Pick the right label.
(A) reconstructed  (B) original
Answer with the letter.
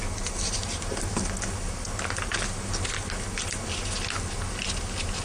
B